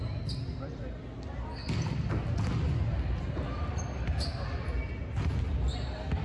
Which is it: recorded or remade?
recorded